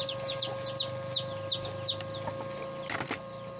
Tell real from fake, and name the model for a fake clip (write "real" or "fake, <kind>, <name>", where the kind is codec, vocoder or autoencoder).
real